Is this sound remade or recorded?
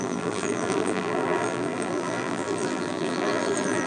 remade